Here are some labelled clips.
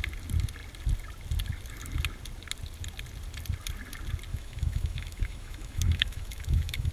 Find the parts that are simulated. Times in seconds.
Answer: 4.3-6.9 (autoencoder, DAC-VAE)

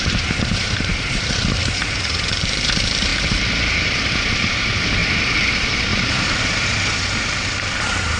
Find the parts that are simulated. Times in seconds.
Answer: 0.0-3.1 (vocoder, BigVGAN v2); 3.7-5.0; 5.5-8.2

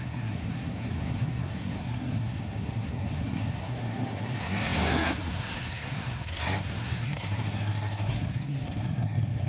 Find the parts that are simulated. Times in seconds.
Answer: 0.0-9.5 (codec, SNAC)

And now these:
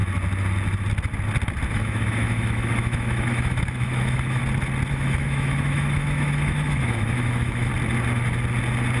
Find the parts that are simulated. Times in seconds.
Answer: 1.7-4.4 (autoencoder, DAC-VAE); 4.9-7.7